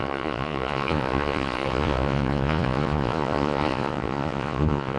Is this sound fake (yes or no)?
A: yes